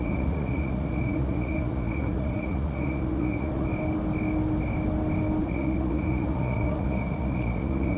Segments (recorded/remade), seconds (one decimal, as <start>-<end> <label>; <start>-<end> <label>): 0.0-3.7 remade; 3.7-5.4 recorded; 5.4-8.0 remade